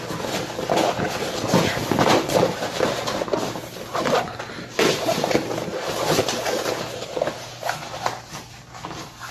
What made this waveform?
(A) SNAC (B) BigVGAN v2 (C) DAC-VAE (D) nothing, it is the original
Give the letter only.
D